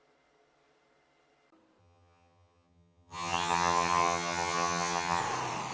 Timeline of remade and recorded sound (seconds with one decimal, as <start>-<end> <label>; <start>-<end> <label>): 0.0-1.8 recorded; 1.8-5.2 remade; 5.2-5.7 recorded